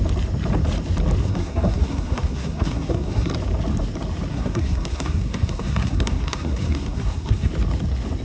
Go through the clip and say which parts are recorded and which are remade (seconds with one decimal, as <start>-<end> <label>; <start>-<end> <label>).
0.0-1.2 recorded; 1.2-3.3 remade; 3.3-4.3 recorded; 4.3-7.5 remade; 7.5-8.2 recorded